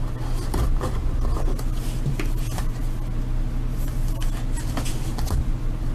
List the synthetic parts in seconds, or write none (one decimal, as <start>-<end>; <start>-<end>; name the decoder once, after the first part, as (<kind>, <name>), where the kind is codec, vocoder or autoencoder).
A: none